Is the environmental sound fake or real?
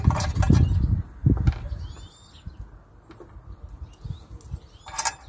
real